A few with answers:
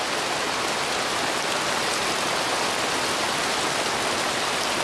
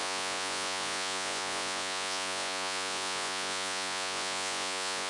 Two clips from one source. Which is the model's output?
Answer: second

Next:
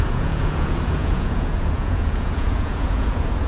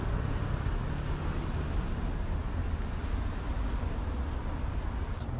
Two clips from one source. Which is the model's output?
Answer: first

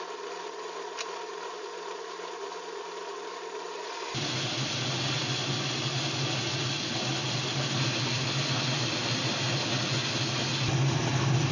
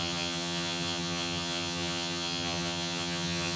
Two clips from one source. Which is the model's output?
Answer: second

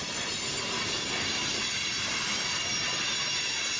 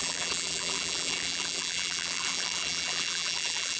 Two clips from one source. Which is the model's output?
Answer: second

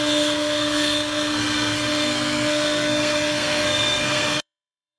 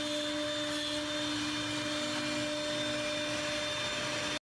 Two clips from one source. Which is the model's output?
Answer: first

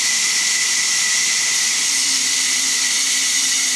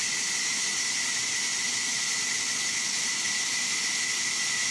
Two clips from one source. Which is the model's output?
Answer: first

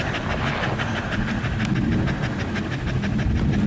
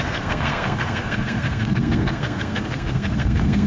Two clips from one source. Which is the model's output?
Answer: second